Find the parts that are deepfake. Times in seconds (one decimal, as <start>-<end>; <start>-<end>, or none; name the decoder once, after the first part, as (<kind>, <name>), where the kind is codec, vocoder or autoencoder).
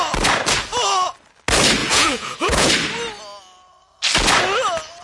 1.8-2.7 (vocoder, Vocos)